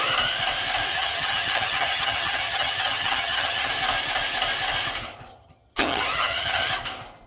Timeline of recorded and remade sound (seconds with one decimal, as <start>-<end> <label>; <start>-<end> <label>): 0.0-0.9 recorded; 0.9-3.7 remade; 3.7-5.3 recorded; 5.3-6.7 remade; 6.7-7.3 recorded